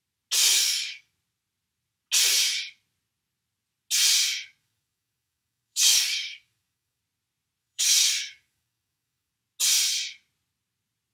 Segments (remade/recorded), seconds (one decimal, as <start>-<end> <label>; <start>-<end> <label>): 0.0-0.4 recorded; 0.4-1.1 remade; 1.1-4.6 recorded; 4.6-7.0 remade; 7.0-7.6 recorded; 7.6-9.3 remade; 9.3-11.1 recorded